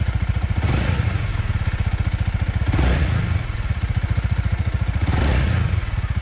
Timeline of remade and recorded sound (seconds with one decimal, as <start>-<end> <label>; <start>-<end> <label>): 0.0-1.3 remade; 1.3-2.6 recorded; 2.6-6.2 remade